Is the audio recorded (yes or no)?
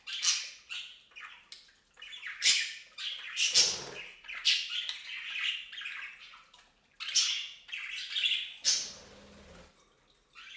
yes